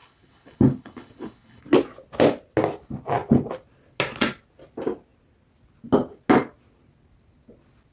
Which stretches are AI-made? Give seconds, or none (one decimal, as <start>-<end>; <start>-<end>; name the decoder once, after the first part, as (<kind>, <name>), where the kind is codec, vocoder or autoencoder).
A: 0.0-1.6 (codec, HILCodec)